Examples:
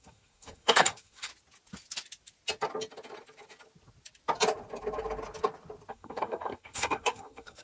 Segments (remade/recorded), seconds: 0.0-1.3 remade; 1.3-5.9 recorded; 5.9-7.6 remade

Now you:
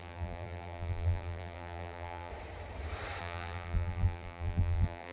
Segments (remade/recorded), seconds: 0.0-2.3 remade; 2.3-3.2 recorded; 3.2-5.1 remade